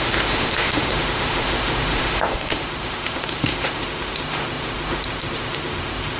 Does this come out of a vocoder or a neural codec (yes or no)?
yes